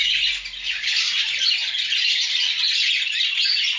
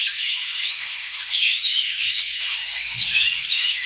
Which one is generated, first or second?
second